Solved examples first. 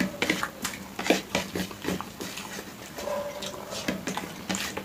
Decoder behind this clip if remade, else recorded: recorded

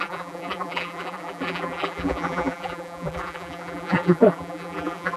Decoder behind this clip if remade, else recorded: remade, vocoder, BigVGAN v2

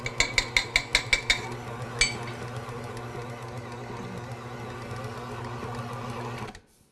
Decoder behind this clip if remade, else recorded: recorded